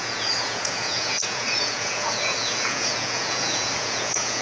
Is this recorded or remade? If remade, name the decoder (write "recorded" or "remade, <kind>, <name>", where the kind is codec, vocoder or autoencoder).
remade, vocoder, Vocos